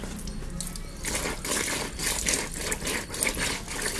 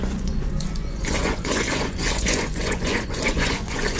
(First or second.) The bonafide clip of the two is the first